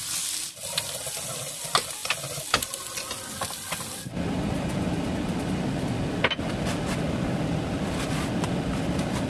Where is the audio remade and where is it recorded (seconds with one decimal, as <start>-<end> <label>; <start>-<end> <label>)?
0.0-9.3 recorded